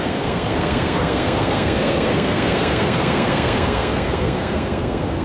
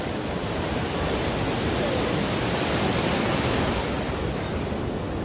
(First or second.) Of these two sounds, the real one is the second